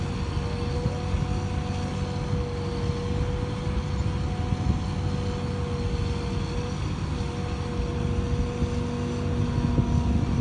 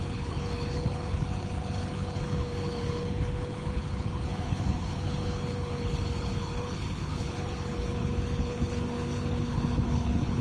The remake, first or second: second